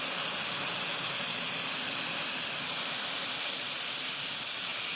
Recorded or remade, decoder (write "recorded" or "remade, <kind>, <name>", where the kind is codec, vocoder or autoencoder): recorded